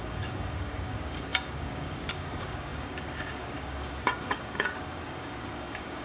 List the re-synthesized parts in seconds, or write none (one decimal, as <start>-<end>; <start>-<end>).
0.0-6.0